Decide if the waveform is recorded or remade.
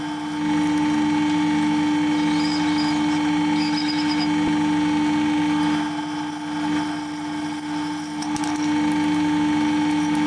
recorded